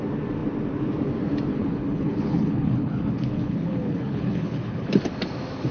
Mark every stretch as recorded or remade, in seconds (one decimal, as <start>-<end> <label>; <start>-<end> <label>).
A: 0.0-1.5 recorded; 1.5-4.9 remade; 4.9-5.7 recorded

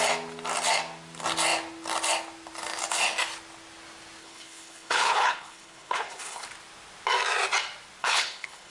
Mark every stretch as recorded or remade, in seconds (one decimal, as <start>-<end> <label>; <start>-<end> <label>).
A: 0.0-4.2 recorded; 4.2-6.4 remade; 6.4-8.0 recorded; 8.0-8.7 remade